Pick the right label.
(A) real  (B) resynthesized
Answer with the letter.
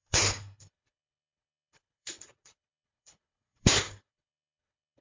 B